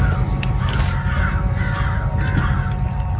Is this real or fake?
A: real